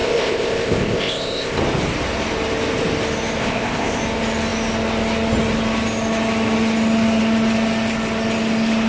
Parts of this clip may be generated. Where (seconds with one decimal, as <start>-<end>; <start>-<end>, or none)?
0.0-1.6; 3.4-4.0